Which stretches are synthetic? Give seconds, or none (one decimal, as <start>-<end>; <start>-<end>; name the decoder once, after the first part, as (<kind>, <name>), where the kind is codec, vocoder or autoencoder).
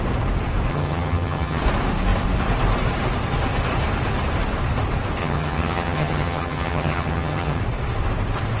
0.7-1.6 (vocoder, HiFi-GAN); 5.2-7.6